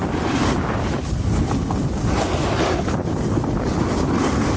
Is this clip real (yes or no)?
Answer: yes